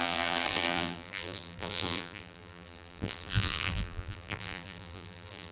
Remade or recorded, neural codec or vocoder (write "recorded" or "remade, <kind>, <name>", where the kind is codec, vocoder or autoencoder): remade, vocoder, BigVGAN v2